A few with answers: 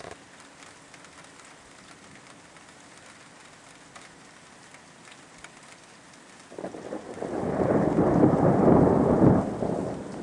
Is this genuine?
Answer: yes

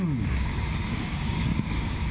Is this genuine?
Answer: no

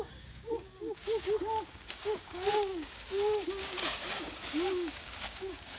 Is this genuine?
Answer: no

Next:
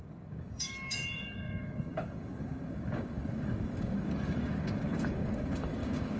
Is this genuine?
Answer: no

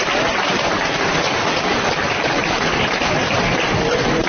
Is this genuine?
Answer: yes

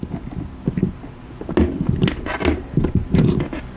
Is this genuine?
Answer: yes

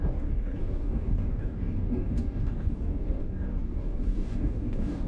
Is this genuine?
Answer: no